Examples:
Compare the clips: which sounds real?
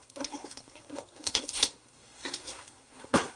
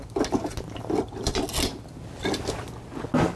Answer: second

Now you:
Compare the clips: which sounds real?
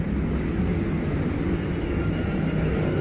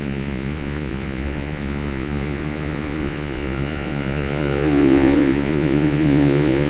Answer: first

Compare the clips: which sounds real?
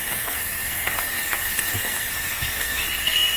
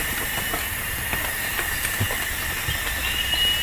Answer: second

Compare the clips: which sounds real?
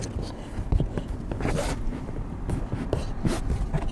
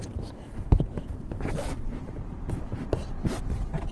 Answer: first